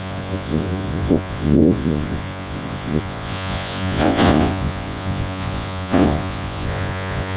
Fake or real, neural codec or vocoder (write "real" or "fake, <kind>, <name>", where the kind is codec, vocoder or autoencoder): fake, vocoder, Vocos